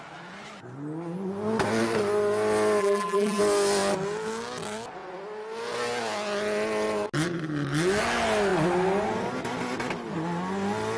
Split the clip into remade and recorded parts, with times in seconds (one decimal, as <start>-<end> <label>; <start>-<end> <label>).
0.0-2.8 recorded; 2.8-3.4 remade; 3.4-11.0 recorded